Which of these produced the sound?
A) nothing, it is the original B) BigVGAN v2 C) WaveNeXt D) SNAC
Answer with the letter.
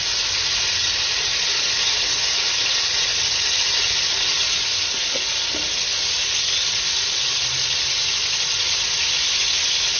A